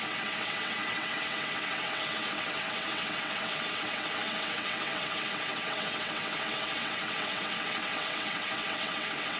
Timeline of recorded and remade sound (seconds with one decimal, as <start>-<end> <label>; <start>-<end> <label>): 0.0-9.4 remade